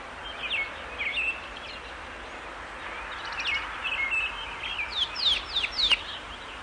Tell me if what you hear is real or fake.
real